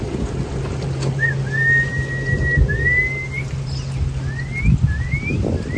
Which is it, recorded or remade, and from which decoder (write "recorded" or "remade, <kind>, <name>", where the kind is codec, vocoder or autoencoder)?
recorded